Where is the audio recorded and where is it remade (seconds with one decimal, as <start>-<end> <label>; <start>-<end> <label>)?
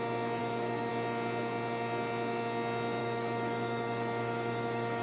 0.0-0.4 recorded; 0.4-0.9 remade; 0.9-3.0 recorded; 3.0-5.0 remade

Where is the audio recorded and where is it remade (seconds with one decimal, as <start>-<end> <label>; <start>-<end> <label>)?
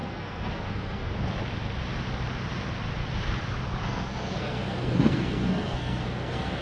0.0-1.1 remade; 1.1-3.8 recorded; 3.8-6.6 remade